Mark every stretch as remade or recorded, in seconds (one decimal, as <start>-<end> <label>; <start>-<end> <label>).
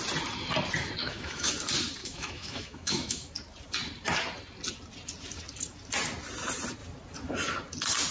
0.0-1.0 recorded; 1.0-1.5 remade; 1.5-2.0 recorded; 2.0-3.3 remade; 3.3-8.1 recorded